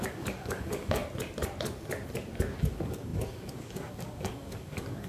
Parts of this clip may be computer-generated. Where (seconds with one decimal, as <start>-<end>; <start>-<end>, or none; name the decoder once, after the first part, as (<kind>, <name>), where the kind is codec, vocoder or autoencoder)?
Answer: 0.0-1.0 (codec, DAC); 2.6-5.1